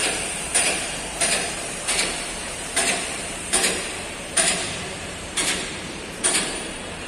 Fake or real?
fake